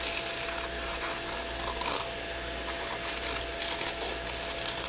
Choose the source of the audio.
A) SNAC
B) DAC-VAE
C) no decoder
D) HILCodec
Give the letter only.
C